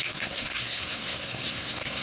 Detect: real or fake fake